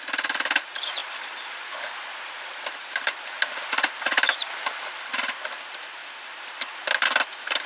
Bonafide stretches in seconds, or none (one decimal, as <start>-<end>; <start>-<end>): 1.0-2.8